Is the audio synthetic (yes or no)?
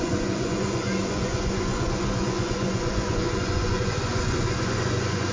yes